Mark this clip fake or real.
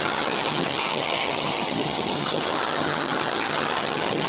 fake